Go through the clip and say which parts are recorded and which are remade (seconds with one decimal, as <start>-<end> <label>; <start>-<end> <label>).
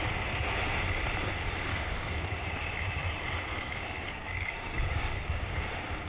0.0-1.7 recorded; 1.7-2.3 remade; 2.3-3.5 recorded; 3.5-5.6 remade; 5.6-6.1 recorded